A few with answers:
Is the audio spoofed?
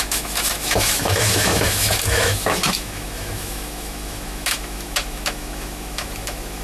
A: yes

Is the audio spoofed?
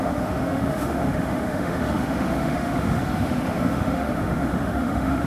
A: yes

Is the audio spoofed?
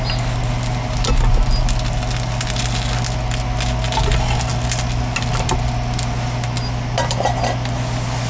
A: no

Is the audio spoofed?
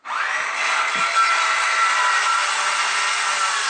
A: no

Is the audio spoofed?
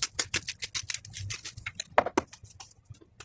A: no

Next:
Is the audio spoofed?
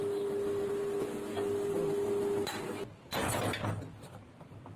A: no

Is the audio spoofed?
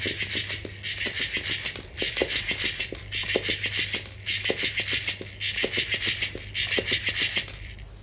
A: no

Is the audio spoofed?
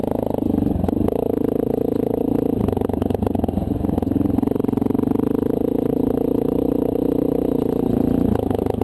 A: no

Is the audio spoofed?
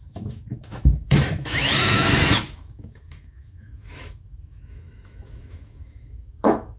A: yes